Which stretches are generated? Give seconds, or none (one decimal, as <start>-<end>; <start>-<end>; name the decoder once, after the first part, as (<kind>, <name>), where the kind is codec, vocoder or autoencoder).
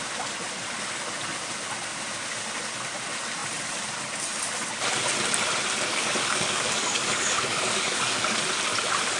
5.9-8.4 (codec, DAC)